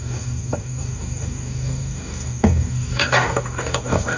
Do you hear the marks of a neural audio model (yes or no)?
yes